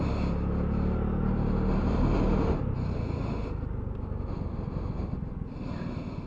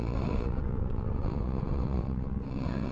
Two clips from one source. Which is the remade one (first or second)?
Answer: second